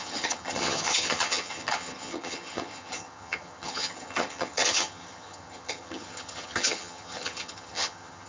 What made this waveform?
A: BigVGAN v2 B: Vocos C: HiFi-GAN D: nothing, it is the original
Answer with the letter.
C